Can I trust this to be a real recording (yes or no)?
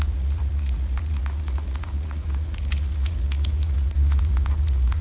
no